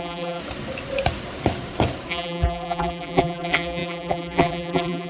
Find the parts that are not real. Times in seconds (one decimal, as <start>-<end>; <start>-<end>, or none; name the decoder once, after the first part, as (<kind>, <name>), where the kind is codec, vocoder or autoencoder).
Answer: 0.0-0.4 (vocoder, BigVGAN v2); 2.1-5.1